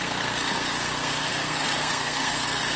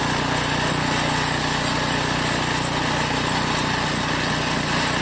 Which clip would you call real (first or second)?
second